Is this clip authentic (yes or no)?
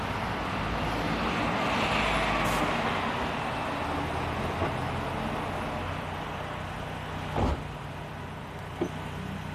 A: yes